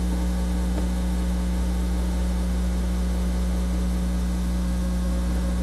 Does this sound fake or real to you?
fake